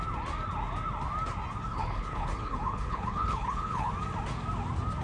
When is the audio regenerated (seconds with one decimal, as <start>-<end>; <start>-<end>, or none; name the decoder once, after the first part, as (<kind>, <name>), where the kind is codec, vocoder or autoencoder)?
1.7-3.9 (codec, HILCodec)